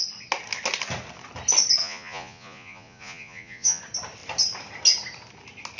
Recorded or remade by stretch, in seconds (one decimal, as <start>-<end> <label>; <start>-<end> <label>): 0.0-1.8 recorded; 1.8-3.8 remade; 3.8-5.8 recorded